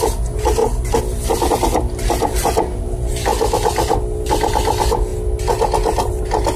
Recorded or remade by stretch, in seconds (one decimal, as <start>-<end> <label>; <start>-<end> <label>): 0.0-6.6 recorded